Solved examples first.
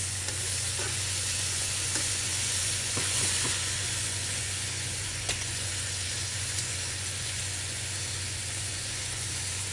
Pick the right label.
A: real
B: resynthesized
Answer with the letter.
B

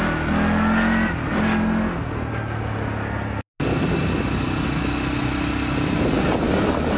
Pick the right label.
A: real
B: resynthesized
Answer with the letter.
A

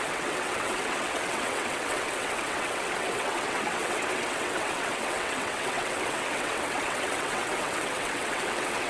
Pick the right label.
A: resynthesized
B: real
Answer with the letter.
A